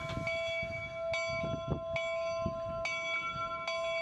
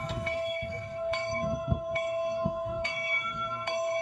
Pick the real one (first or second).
first